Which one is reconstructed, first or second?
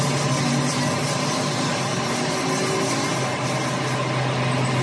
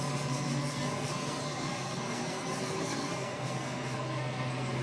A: second